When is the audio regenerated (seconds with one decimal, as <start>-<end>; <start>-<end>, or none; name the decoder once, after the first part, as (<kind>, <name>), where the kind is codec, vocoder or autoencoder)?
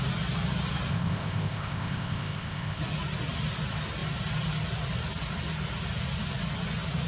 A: 0.9-2.8 (codec, ZipCodec)